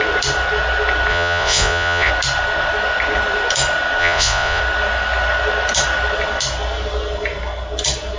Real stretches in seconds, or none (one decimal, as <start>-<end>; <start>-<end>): 0.0-1.1; 2.1-4.0; 4.6-8.2